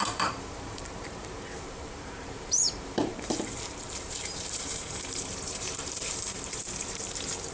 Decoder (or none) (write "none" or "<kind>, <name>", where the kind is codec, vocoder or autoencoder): vocoder, BigVGAN v2